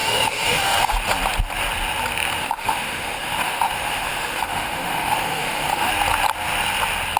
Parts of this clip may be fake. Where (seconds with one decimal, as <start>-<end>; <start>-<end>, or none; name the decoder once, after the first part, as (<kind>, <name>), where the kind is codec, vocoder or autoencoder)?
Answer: 0.0-0.8 (autoencoder, DAC-VAE); 2.4-5.9